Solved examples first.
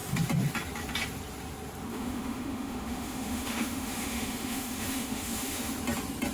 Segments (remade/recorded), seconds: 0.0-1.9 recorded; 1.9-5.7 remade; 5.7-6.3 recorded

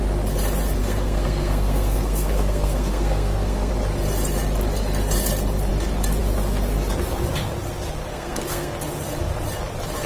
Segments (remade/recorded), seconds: 0.0-0.8 recorded; 0.8-3.7 remade; 3.7-8.1 recorded; 8.1-8.7 remade; 8.7-10.1 recorded

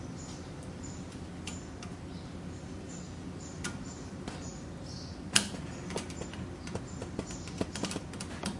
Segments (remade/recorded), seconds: 0.0-8.6 remade

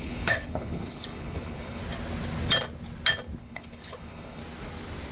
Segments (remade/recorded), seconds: 0.0-1.8 remade; 1.8-3.4 recorded; 3.4-4.4 remade; 4.4-5.1 recorded